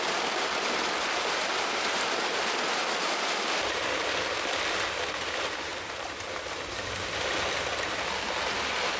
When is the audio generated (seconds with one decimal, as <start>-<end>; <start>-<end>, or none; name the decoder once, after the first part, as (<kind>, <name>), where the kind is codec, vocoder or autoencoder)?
none